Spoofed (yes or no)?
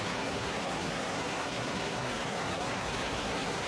yes